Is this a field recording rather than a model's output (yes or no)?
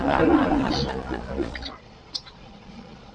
no